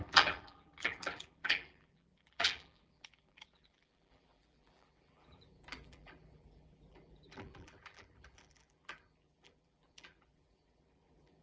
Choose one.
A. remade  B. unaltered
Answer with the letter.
A